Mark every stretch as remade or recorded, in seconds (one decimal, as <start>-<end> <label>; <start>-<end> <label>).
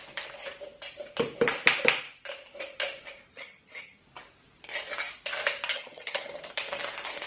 0.0-3.3 recorded; 3.3-4.0 remade; 4.0-5.7 recorded; 5.7-6.3 remade; 6.3-7.3 recorded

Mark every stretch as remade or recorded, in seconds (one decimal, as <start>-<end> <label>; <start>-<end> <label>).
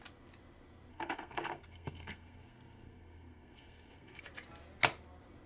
0.0-0.9 recorded; 0.9-4.2 remade; 4.2-5.5 recorded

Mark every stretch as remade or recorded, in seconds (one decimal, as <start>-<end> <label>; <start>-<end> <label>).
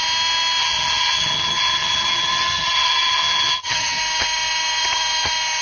0.0-0.6 recorded; 0.6-4.0 remade; 4.0-5.6 recorded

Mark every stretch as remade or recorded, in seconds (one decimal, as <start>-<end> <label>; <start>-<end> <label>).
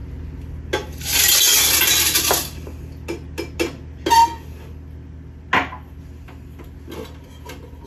0.0-7.9 recorded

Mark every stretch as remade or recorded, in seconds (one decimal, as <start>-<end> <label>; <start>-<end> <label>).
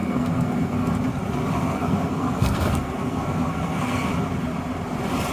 0.0-0.9 remade; 0.9-1.6 recorded; 1.6-4.1 remade; 4.1-5.3 recorded